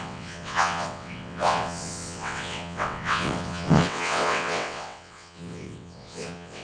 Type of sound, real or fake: fake